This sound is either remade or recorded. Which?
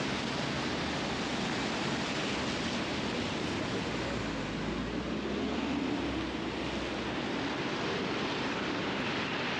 recorded